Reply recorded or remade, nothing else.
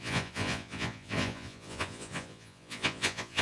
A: remade